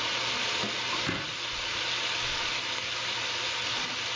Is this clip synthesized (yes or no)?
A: no